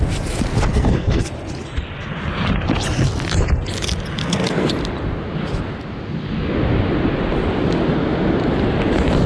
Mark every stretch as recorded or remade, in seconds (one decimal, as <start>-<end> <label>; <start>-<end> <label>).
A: 0.0-0.7 recorded; 0.7-1.3 remade; 1.3-4.2 recorded; 4.2-4.7 remade; 4.7-9.3 recorded